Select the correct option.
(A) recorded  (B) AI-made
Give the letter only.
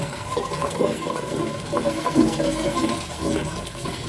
B